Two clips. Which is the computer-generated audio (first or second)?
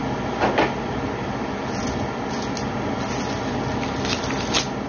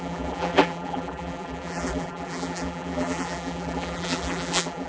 second